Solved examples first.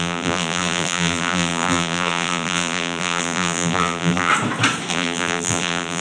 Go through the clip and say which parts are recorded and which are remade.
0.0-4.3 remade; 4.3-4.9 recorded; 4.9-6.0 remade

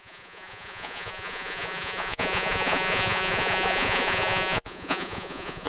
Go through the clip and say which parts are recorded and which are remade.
0.0-5.7 remade

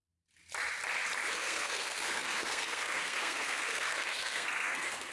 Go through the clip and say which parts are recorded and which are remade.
0.0-1.3 recorded; 1.3-5.1 remade

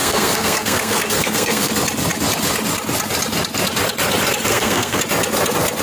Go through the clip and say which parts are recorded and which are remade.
0.0-1.7 remade; 1.7-4.5 recorded; 4.5-5.0 remade; 5.0-5.8 recorded

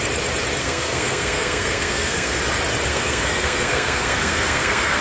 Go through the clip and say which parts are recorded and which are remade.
0.0-0.6 recorded; 0.6-2.4 remade; 2.4-2.9 recorded; 2.9-5.0 remade

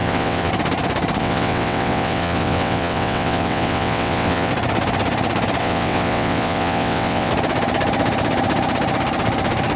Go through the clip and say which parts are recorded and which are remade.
0.0-0.5 remade; 0.5-1.2 recorded; 1.2-4.5 remade; 4.5-5.6 recorded; 5.6-7.3 remade; 7.3-9.8 recorded